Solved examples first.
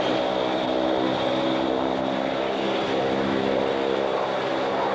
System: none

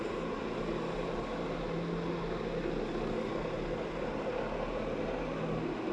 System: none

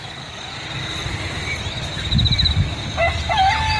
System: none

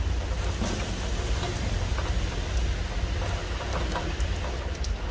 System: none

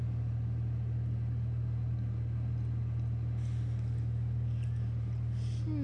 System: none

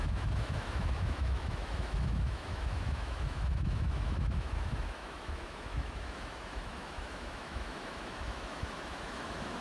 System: autoencoder, DAC-VAE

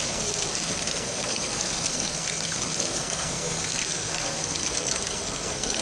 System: codec, SNAC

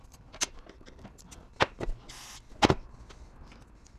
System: none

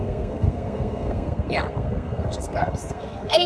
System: codec, SNAC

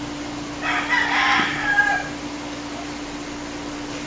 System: none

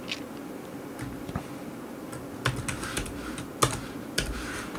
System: none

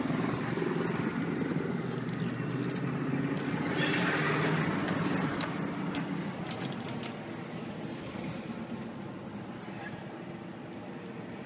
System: none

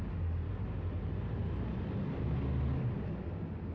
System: none